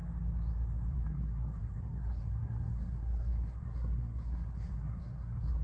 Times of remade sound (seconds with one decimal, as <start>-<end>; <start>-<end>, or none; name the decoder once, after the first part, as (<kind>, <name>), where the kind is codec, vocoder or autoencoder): 0.9-5.6 (codec, SNAC)